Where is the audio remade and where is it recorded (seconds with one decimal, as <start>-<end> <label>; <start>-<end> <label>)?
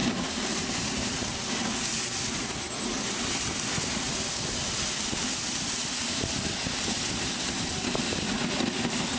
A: 0.0-9.2 recorded